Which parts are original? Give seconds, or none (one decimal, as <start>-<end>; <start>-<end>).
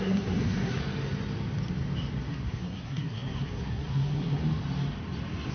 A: 0.8-2.3; 4.4-5.5